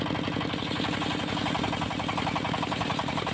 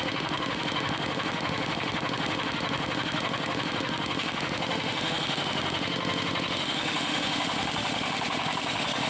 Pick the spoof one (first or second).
second